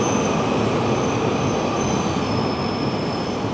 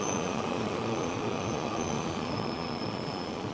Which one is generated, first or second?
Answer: second